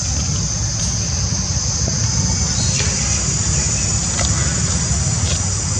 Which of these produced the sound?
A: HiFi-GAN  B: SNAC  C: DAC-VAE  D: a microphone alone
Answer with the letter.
D